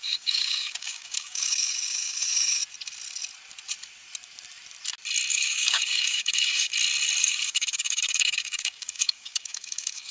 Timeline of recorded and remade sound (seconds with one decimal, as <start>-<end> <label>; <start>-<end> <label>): 0.0-2.6 remade; 2.6-5.3 recorded; 5.3-6.7 remade; 6.7-7.2 recorded; 7.2-10.1 remade